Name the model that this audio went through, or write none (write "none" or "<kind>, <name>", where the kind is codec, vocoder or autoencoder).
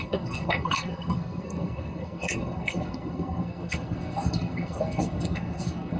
codec, SNAC